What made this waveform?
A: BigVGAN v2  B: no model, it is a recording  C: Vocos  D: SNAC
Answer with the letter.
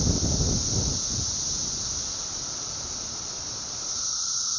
B